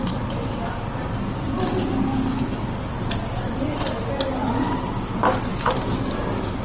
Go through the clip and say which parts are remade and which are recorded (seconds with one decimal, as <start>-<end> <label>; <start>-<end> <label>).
0.0-6.6 recorded